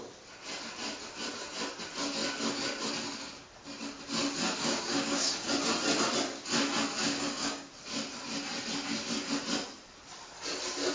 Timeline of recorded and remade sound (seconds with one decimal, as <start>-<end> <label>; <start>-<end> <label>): 0.0-4.6 recorded; 4.6-5.5 remade; 5.5-7.0 recorded; 7.0-7.7 remade; 7.7-10.9 recorded